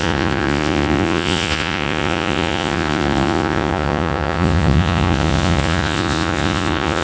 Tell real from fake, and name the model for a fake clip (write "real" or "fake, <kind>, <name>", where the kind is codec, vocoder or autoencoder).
fake, vocoder, Vocos